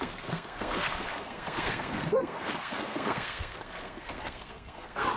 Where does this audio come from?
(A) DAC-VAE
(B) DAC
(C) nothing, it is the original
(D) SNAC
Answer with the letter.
D